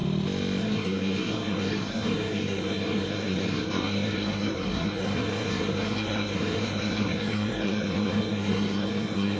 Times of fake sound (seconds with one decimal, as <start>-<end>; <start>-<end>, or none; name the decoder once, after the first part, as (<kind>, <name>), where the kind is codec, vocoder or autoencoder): 0.6-9.4 (codec, SNAC)